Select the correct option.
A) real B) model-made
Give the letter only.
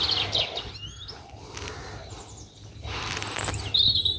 A